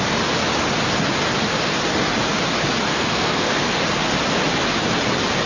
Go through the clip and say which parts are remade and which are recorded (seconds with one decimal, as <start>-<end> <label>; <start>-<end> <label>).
0.0-2.9 recorded; 2.9-3.7 remade; 3.7-5.5 recorded